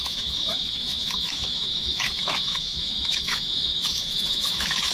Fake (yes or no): yes